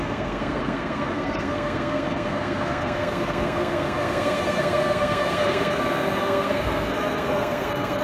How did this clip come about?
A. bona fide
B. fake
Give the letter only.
B